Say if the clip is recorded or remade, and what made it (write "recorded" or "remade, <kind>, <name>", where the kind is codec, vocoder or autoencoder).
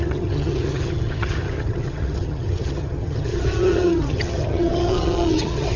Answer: remade, vocoder, HiFi-GAN